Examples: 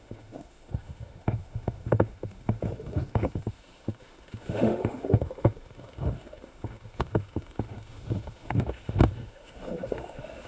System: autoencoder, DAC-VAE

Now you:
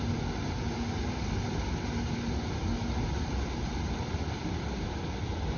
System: none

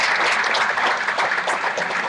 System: none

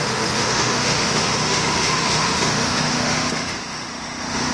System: autoencoder, DAC-VAE